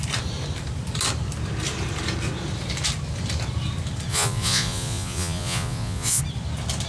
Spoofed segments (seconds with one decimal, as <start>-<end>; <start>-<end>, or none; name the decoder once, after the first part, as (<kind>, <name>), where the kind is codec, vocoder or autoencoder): 4.1-6.2 (vocoder, Vocos)